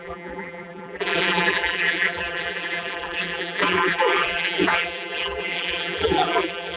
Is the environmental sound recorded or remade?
remade